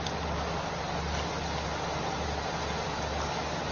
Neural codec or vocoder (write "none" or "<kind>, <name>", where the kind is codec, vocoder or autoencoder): none